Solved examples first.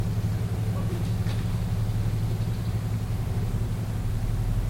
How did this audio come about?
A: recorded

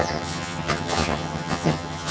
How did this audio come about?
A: remade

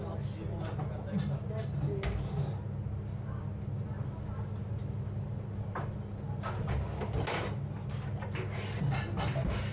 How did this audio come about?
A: recorded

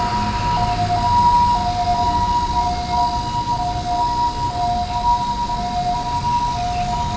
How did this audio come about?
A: recorded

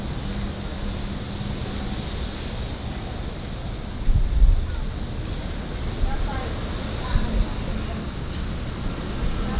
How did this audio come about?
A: recorded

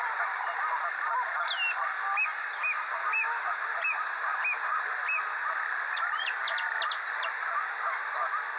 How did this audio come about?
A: recorded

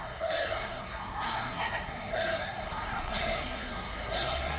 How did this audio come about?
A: remade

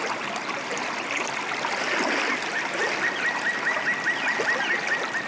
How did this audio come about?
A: recorded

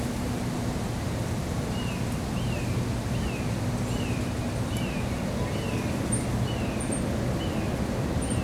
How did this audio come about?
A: recorded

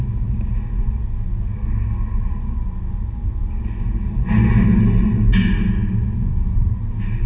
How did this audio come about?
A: recorded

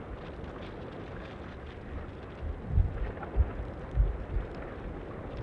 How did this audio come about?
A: recorded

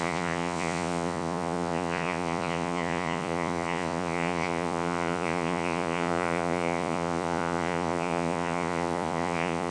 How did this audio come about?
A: remade